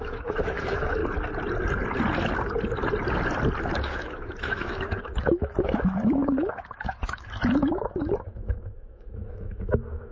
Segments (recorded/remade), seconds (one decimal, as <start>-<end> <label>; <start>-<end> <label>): 0.0-1.0 remade; 1.0-3.8 recorded; 3.8-10.1 remade